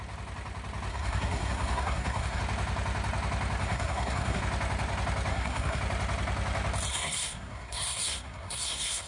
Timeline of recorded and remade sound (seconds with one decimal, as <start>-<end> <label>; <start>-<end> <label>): 0.0-0.9 recorded; 0.9-2.4 remade; 2.4-3.6 recorded; 3.6-4.4 remade; 4.4-5.3 recorded; 5.3-5.8 remade; 5.8-6.9 recorded; 6.9-9.1 remade